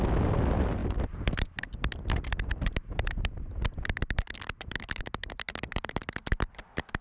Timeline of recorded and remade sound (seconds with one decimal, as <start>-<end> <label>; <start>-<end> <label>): 0.0-7.0 recorded